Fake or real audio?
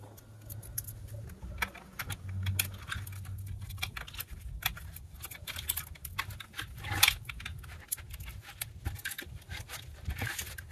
real